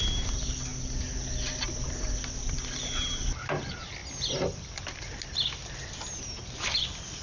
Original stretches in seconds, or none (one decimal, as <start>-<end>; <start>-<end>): 0.0-7.2